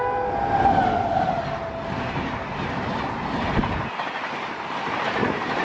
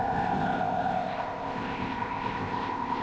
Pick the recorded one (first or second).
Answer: first